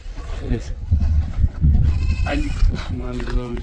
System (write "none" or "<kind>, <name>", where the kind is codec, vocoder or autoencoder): vocoder, WaveNeXt